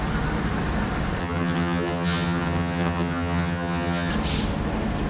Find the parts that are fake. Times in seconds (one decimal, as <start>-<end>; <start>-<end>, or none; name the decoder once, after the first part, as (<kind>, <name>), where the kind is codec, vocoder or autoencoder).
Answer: 1.2-4.1 (vocoder, HiFi-GAN)